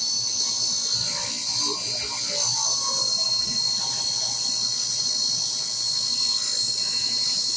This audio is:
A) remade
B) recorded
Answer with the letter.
B